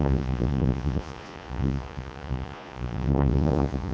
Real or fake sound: fake